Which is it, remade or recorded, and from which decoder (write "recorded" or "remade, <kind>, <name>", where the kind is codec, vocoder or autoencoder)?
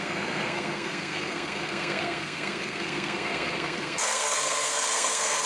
remade, codec, SNAC